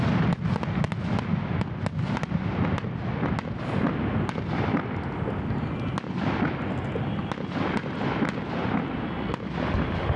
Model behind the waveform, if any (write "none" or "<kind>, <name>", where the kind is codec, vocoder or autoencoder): none